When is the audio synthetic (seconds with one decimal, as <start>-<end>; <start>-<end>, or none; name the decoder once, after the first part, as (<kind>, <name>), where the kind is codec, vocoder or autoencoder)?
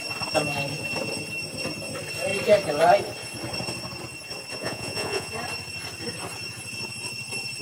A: 4.6-5.3 (vocoder, Vocos)